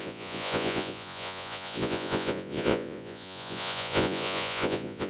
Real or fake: fake